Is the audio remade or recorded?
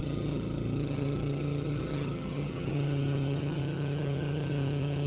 remade